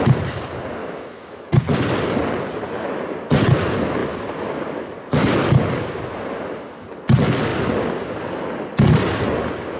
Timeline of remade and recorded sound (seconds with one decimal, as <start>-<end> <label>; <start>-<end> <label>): 0.0-0.8 recorded; 0.8-1.5 remade; 1.5-9.8 recorded